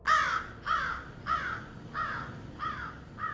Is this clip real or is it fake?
real